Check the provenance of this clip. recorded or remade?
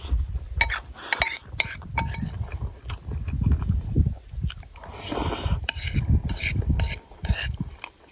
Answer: recorded